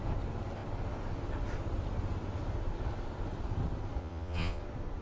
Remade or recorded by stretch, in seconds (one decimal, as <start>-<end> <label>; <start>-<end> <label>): 0.0-4.0 recorded; 4.0-4.6 remade; 4.6-5.0 recorded